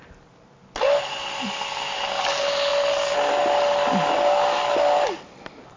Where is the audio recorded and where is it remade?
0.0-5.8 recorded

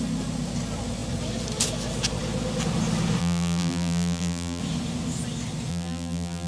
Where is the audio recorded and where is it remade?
0.0-3.2 recorded; 3.2-4.6 remade; 4.6-5.7 recorded; 5.7-6.5 remade

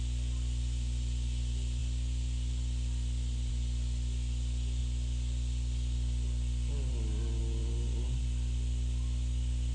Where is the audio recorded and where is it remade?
0.0-1.8 recorded; 1.8-3.5 remade; 3.5-9.7 recorded

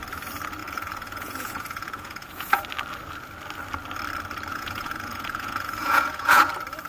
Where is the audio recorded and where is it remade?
0.0-0.6 recorded; 0.6-2.6 remade; 2.6-4.5 recorded; 4.5-6.5 remade; 6.5-6.9 recorded

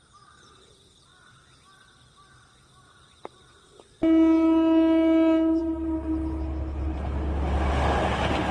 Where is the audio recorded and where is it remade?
0.0-8.5 recorded

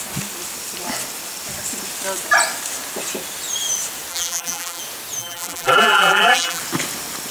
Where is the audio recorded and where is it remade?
0.0-4.1 recorded; 4.1-4.8 remade; 4.8-5.2 recorded; 5.2-6.6 remade; 6.6-7.3 recorded